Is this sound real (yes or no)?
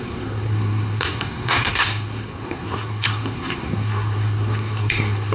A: no